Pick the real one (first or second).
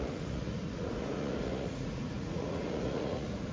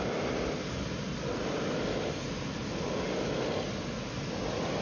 second